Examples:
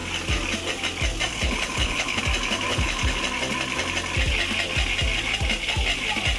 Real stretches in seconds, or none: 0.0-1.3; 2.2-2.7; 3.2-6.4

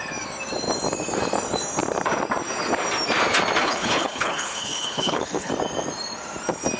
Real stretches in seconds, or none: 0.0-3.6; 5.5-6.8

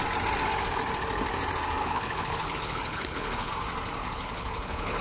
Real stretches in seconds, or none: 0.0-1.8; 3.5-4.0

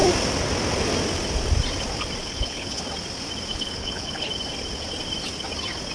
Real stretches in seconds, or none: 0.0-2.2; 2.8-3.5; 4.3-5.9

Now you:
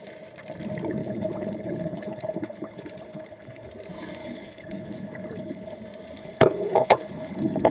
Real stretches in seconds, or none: 0.0-1.0; 3.7-4.2; 5.8-6.2

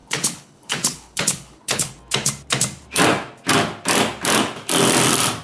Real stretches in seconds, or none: 1.9-5.4

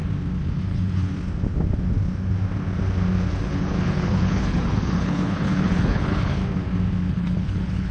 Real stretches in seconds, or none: 0.0-0.6; 1.1-3.3; 6.4-7.1